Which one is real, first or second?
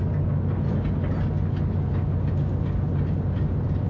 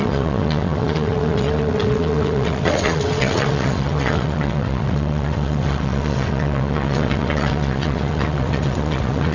first